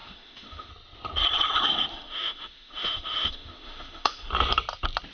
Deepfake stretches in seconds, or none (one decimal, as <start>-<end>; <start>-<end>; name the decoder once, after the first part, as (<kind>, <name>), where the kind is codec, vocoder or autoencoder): 0.0-0.7 (autoencoder, DAC-VAE); 1.9-4.3

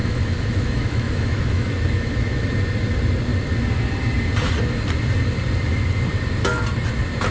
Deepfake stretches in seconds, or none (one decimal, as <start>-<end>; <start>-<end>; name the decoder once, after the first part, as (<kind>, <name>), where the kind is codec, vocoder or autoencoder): 0.0-2.5 (autoencoder, DAC-VAE)

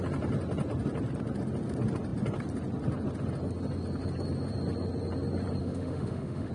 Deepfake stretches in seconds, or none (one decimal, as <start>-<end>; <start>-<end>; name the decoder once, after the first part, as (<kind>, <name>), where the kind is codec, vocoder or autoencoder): 5.6-6.5 (autoencoder, DAC-VAE)

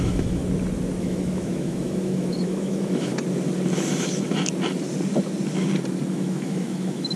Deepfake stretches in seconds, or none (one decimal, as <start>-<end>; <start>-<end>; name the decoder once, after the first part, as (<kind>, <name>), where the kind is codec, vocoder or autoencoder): 0.0-0.4 (autoencoder, DAC-VAE); 1.0-3.1; 6.1-7.2

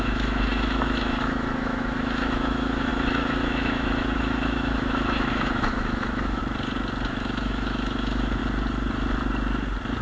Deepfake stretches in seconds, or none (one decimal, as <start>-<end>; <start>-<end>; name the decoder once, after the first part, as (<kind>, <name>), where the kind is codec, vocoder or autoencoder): 0.0-6.4 (autoencoder, DAC-VAE); 7.1-8.4

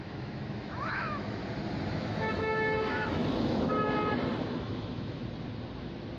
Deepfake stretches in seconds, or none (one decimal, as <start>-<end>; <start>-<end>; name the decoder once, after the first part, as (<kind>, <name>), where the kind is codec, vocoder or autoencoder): 0.0-1.4 (autoencoder, DAC-VAE); 1.9-3.2; 4.4-5.2

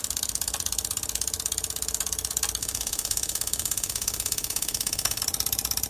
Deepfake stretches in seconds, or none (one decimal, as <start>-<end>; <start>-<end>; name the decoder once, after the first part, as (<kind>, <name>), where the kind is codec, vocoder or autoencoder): 2.6-5.2 (autoencoder, DAC-VAE)

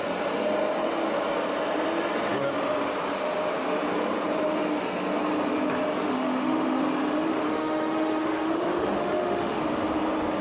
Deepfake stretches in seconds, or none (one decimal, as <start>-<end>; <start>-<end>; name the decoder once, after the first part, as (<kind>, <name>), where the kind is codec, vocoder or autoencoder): 6.0-6.8 (autoencoder, DAC-VAE); 7.3-8.5; 9.0-9.6